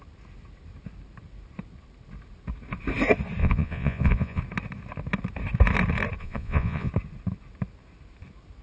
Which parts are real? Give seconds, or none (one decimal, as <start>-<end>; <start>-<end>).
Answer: 0.0-3.4; 4.4-6.2; 6.9-8.6